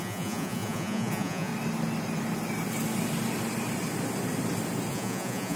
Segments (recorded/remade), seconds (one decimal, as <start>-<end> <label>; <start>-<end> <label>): 0.0-1.5 remade; 1.5-4.9 recorded; 4.9-5.6 remade